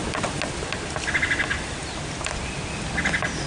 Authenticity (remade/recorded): recorded